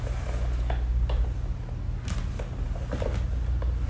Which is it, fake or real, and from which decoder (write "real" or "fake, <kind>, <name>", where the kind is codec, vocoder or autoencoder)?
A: real